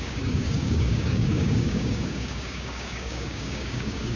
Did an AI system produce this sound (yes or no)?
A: yes